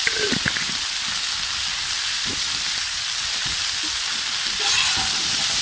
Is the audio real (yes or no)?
yes